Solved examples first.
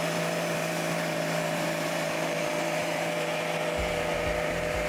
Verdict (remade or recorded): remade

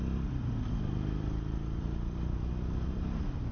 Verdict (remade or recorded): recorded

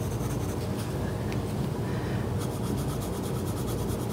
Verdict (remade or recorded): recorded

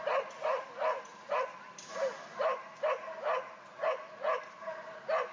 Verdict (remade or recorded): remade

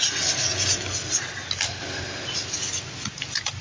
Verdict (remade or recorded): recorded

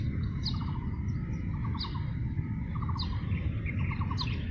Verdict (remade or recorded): recorded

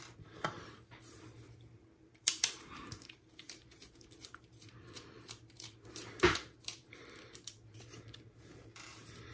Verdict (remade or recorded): remade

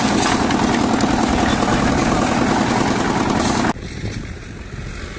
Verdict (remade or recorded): recorded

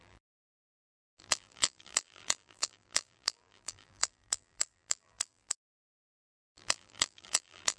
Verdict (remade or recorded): remade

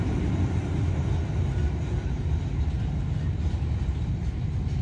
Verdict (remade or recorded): recorded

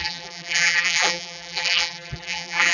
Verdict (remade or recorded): remade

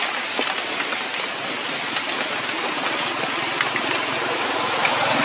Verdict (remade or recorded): recorded